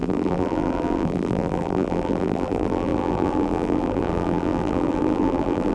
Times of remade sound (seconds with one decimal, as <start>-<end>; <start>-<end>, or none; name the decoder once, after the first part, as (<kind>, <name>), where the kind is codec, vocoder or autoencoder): 0.0-5.7 (vocoder, BigVGAN v2)

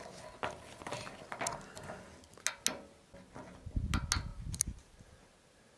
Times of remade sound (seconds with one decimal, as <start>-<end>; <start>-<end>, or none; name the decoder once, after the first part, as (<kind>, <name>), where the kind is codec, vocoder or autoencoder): 4.3-5.0 (vocoder, BigVGAN v2)

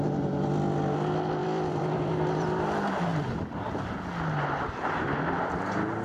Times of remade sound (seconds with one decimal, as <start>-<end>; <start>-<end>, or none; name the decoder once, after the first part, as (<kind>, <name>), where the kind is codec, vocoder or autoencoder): 1.4-2.6 (vocoder, BigVGAN v2)

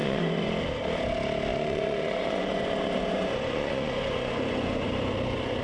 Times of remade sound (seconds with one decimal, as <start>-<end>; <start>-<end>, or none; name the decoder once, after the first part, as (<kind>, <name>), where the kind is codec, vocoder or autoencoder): 0.0-0.5 (vocoder, Vocos); 1.5-4.9

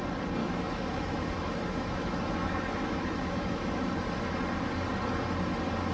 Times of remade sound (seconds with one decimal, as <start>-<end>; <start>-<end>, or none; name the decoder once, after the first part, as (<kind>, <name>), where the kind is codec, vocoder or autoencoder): 0.4-3.9 (autoencoder, DAC-VAE)

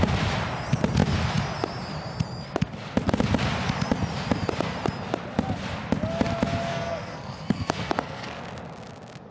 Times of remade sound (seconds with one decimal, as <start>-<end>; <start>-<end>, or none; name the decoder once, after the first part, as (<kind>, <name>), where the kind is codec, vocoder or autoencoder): 6.7-8.4 (codec, SNAC)